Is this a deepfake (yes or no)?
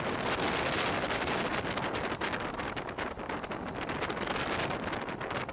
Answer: no